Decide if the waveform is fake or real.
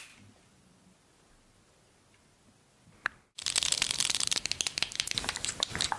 real